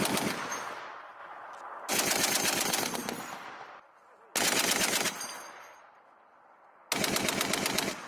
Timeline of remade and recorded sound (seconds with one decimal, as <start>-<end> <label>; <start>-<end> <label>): 0.0-8.1 recorded